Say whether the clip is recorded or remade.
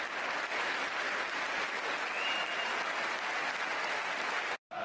recorded